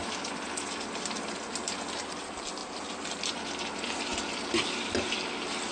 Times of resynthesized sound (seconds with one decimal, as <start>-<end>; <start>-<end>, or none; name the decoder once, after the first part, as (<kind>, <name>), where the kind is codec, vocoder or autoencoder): none